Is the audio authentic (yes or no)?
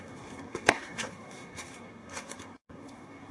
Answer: no